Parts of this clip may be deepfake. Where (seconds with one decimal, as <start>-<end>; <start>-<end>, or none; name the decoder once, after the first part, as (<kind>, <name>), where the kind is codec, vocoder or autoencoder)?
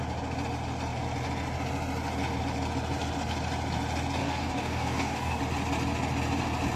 4.2-5.4 (codec, DAC)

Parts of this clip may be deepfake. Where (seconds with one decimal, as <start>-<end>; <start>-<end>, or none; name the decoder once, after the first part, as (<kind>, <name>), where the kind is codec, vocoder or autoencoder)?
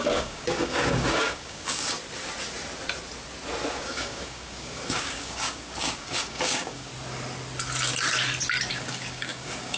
0.0-2.0 (codec, DAC); 3.7-6.9; 8.7-9.8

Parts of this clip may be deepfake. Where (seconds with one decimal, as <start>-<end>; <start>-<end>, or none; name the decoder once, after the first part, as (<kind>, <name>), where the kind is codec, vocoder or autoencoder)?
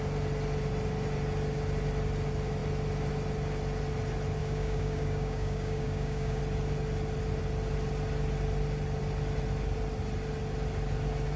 4.4-6.4 (codec, DAC)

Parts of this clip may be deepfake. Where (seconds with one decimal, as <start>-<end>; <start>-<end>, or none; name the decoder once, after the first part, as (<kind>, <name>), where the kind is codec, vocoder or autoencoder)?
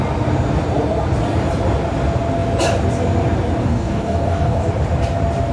3.6-4.7 (codec, DAC)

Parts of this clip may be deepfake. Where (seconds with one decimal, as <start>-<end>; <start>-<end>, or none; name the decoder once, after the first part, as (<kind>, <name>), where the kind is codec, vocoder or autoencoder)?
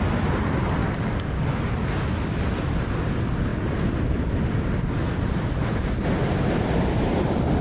0.8-1.4 (codec, DAC)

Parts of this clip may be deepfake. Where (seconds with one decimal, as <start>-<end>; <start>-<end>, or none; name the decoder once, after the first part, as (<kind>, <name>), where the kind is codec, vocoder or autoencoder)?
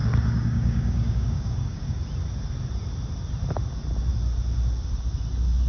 0.0-2.0 (codec, DAC)